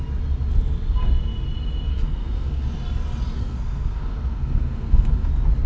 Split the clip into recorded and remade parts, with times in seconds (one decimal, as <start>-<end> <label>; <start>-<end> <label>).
0.0-1.9 recorded; 1.9-2.6 remade; 2.6-3.4 recorded; 3.4-5.3 remade; 5.3-5.7 recorded

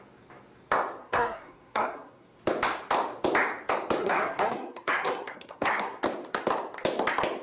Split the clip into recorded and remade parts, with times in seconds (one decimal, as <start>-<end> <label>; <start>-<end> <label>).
0.0-1.0 recorded; 1.0-2.4 remade; 2.4-4.0 recorded; 4.0-6.0 remade; 6.0-7.4 recorded

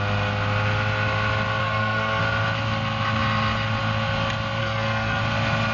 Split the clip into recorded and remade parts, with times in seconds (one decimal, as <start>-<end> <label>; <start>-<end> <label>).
0.0-1.6 recorded; 1.6-2.2 remade; 2.2-4.6 recorded; 4.6-5.2 remade; 5.2-5.7 recorded

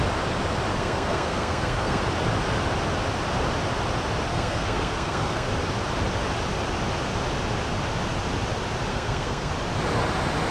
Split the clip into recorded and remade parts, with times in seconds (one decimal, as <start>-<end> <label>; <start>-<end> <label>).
0.0-0.7 recorded; 0.7-2.0 remade; 2.0-4.3 recorded; 4.3-5.5 remade; 5.5-8.9 recorded; 8.9-9.5 remade; 9.5-10.5 recorded

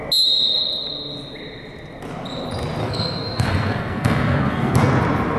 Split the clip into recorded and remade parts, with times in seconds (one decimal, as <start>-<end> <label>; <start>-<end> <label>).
0.0-2.8 recorded; 2.8-4.9 remade; 4.9-5.4 recorded